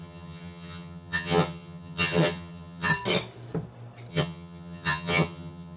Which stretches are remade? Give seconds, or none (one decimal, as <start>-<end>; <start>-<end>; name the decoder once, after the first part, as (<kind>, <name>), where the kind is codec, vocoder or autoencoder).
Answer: 0.0-2.9 (vocoder, HiFi-GAN); 4.1-5.8